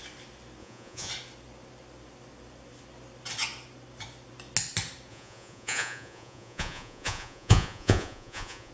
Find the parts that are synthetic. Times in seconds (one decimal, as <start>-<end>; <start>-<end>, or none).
0.6-1.1; 5.1-8.7